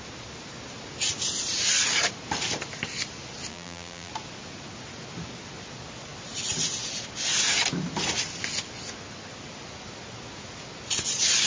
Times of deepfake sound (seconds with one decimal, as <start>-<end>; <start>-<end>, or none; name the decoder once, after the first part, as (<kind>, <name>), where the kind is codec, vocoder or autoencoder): 3.5-4.1 (vocoder, BigVGAN v2)

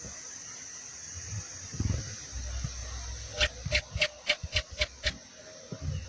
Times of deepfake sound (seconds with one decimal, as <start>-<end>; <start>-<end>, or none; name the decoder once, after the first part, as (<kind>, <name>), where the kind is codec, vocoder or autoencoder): none

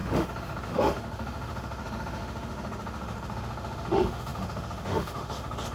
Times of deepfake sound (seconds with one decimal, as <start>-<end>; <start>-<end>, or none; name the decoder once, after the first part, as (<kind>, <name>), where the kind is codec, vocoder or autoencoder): 0.0-5.7 (autoencoder, DAC-VAE)

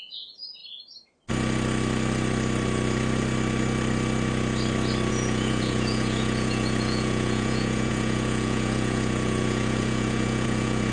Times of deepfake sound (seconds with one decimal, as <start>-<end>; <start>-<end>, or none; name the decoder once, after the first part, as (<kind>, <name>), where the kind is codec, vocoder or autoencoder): 0.0-0.6 (vocoder, Vocos); 5.1-10.9

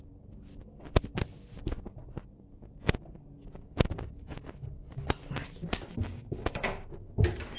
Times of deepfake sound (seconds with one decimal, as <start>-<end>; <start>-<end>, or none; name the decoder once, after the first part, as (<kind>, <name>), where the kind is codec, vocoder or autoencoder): 5.9-6.9 (codec, DAC)

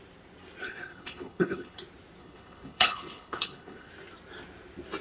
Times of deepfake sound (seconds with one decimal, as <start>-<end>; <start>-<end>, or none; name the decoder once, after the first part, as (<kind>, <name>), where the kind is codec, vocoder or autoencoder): 0.6-1.8 (codec, HILCodec); 2.2-3.9

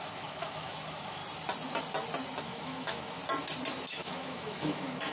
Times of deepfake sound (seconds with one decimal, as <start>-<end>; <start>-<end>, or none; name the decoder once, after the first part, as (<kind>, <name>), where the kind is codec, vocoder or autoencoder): 0.0-1.2 (autoencoder, DAC-VAE); 2.4-3.2; 3.9-5.1